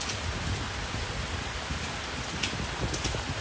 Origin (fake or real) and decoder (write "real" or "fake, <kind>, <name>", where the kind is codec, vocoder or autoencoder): real